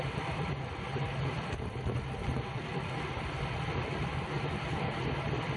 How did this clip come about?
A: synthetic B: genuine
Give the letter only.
B